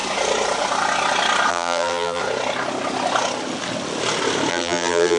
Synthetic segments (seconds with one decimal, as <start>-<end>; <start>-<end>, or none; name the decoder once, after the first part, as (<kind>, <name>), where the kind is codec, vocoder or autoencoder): 1.5-2.2 (vocoder, BigVGAN v2); 4.5-5.2